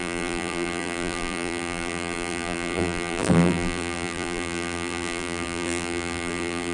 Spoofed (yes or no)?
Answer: yes